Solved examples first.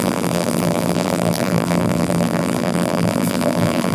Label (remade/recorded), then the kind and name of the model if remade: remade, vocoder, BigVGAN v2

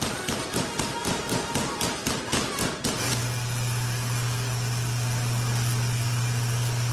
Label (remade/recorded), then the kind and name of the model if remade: recorded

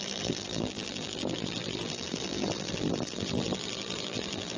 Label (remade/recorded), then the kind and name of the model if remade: remade, vocoder, BigVGAN v2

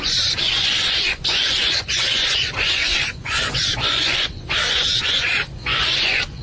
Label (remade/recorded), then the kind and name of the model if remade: remade, vocoder, Vocos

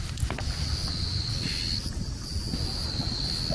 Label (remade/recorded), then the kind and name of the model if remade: recorded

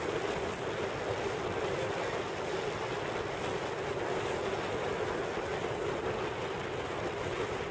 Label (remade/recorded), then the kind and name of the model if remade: recorded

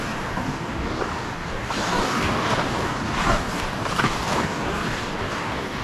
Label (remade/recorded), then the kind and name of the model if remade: remade, codec, DAC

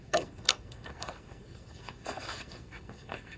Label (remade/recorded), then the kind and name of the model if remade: remade, codec, SNAC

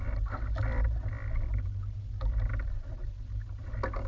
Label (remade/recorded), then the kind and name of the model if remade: recorded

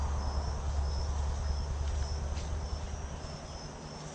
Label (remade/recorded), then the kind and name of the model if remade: recorded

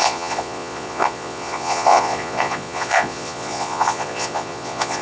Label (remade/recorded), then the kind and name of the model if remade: remade, vocoder, Vocos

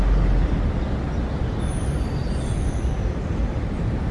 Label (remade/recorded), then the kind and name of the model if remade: recorded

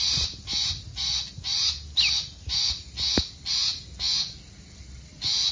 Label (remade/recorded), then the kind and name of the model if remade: recorded